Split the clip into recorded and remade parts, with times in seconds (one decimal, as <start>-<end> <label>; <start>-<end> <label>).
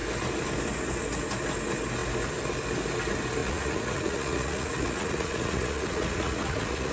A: 0.0-3.4 recorded; 3.4-6.9 remade